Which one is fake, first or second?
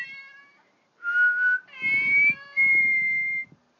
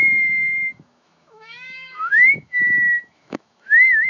second